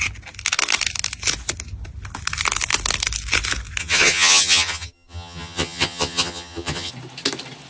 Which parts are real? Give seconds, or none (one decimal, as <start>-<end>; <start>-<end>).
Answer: 0.0-3.8; 6.9-7.7